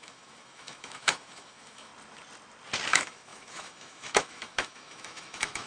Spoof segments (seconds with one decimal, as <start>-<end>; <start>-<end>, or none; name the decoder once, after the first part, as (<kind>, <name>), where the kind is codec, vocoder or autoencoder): 0.0-1.9 (autoencoder, DAC-VAE); 2.9-5.7